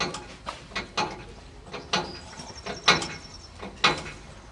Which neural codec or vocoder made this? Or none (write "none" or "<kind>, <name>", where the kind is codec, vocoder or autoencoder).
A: none